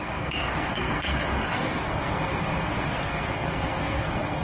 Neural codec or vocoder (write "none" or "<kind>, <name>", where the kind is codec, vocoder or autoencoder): codec, SNAC